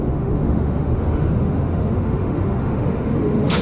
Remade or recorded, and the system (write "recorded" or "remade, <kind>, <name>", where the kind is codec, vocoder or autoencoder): remade, autoencoder, DAC-VAE